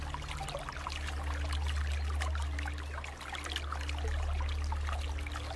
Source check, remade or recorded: recorded